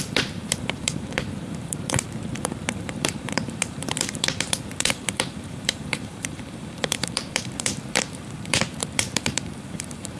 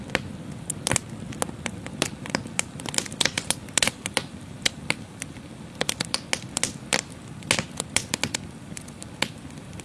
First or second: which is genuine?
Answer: second